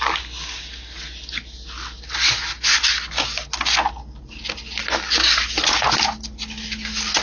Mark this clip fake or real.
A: real